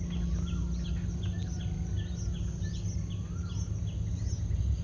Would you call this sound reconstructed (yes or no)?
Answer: no